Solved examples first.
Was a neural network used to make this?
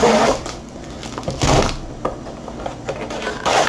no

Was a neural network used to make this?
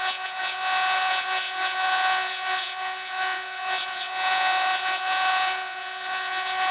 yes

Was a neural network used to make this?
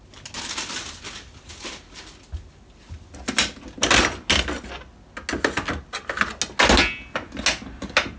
no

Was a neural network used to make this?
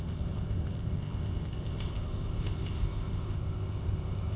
yes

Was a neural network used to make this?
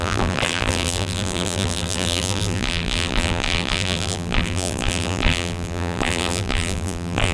yes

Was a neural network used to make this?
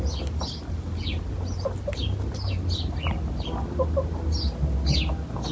no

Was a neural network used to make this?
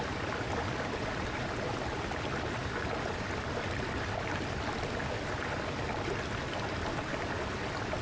no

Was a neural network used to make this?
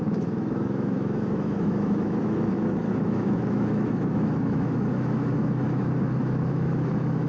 yes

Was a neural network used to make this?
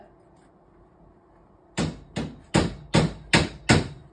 no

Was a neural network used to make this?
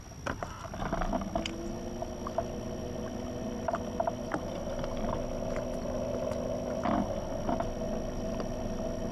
no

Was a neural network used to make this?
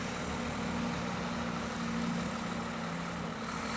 no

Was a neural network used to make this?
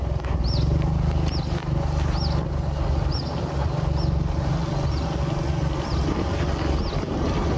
no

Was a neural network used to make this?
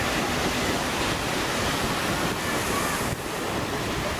no